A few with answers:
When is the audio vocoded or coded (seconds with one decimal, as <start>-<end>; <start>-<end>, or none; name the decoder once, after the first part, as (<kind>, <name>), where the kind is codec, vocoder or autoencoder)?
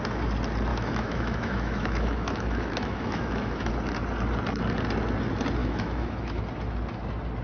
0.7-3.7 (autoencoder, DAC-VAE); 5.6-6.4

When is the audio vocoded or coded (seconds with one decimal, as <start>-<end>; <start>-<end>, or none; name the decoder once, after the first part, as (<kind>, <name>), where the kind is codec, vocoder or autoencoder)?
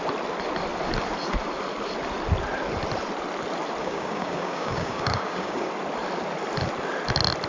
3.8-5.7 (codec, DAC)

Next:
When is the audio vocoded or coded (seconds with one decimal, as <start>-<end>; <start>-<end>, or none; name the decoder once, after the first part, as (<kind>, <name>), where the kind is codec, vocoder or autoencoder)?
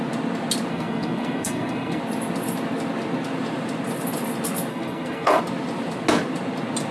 0.7-2.0 (codec, SNAC); 4.7-5.4